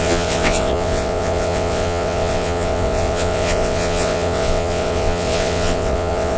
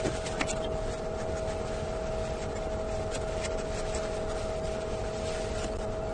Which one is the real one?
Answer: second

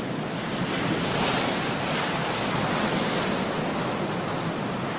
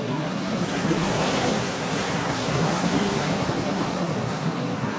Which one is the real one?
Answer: first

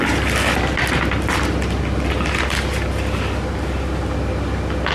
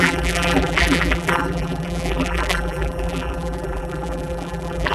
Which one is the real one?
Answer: first